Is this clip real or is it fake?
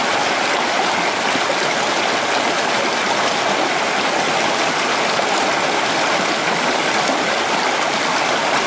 real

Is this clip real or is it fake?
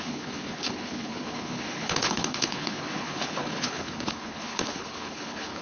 fake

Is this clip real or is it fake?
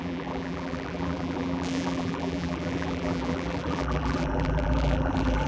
fake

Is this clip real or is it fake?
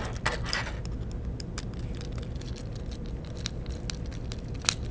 real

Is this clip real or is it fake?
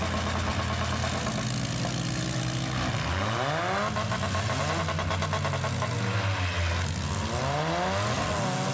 real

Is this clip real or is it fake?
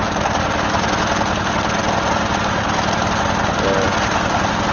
real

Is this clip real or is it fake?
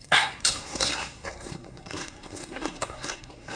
fake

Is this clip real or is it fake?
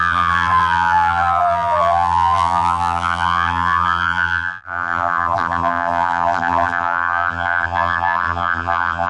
fake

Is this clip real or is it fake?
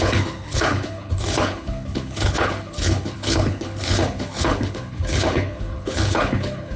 fake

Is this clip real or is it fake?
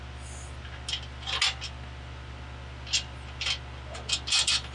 real